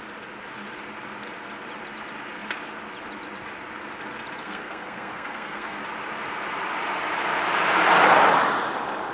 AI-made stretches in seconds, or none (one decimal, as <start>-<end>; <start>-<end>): 4.4-5.8